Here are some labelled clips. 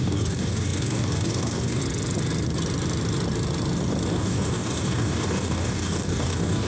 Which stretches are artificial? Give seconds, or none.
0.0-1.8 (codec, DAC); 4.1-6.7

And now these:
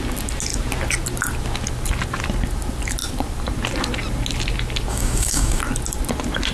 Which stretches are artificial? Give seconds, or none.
4.9-5.6 (codec, DAC)

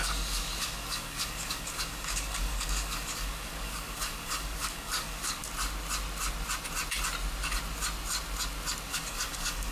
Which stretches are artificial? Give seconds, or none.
0.0-5.4 (codec, DAC); 8.9-9.7

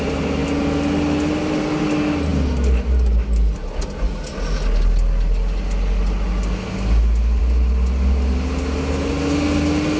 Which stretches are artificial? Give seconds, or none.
none

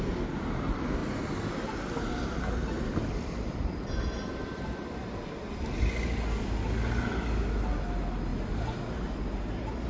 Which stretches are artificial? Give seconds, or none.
none